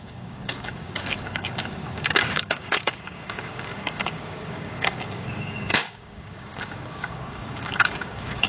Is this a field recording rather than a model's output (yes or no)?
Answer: no